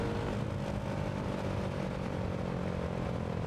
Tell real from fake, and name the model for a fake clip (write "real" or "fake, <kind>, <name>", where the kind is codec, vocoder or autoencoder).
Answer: real